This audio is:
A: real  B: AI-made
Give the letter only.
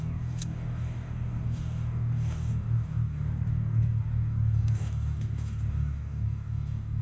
B